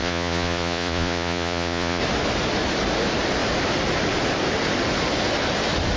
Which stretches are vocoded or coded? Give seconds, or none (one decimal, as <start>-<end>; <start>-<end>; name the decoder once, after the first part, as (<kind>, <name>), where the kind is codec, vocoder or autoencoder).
0.0-2.0 (vocoder, Vocos)